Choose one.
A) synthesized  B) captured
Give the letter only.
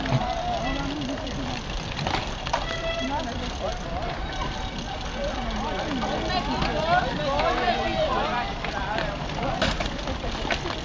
B